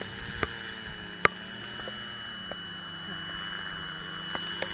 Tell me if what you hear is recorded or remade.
recorded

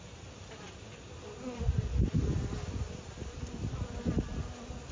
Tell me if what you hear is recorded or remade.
recorded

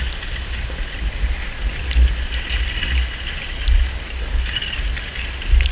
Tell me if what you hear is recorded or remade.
recorded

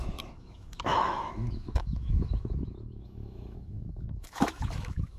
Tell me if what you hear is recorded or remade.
remade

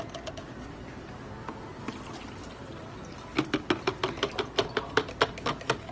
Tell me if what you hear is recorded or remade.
recorded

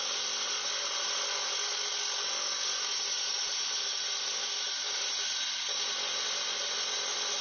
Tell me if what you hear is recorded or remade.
recorded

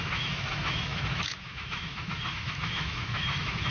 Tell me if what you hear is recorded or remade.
remade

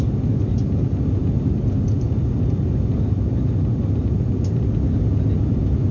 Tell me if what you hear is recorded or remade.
recorded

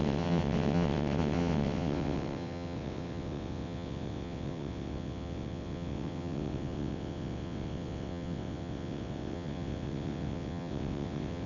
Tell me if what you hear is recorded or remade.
remade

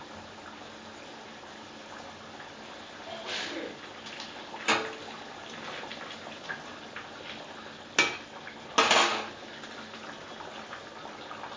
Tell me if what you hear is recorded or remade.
recorded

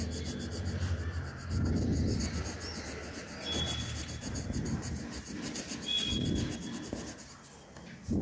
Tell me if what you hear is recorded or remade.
recorded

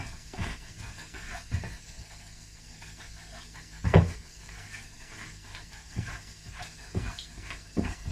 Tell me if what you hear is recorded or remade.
remade